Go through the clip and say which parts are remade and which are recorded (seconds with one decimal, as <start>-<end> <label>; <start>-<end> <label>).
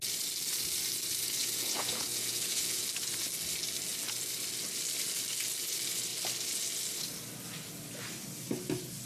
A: 0.0-1.4 recorded; 1.4-2.8 remade; 2.8-9.1 recorded